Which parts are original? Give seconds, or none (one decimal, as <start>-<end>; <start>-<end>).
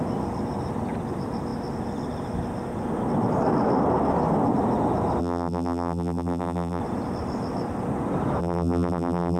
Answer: 0.0-5.2; 6.8-8.4